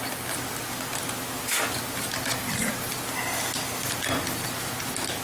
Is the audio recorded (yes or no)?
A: yes